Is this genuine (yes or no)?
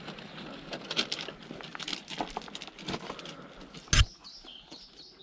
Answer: yes